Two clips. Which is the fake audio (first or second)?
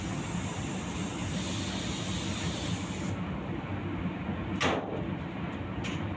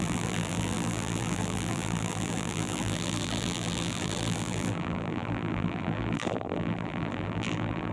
second